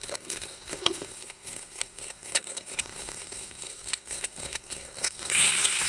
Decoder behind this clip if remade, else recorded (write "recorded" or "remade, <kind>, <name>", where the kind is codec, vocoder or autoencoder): remade, codec, SNAC